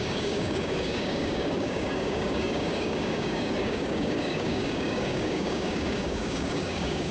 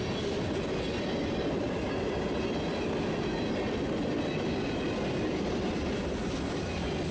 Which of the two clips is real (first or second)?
second